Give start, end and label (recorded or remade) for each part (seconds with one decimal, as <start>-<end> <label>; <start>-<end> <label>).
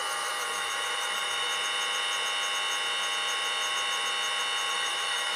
0.0-1.5 remade; 1.5-4.7 recorded; 4.7-5.4 remade